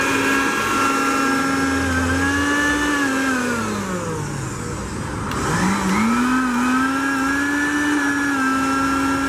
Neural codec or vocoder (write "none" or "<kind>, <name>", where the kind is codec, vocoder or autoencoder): none